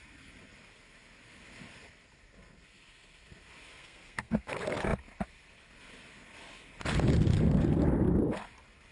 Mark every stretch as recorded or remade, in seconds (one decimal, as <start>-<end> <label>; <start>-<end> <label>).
0.0-3.8 recorded; 3.8-4.5 remade; 4.5-8.9 recorded